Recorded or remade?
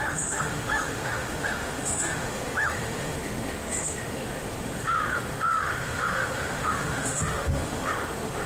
remade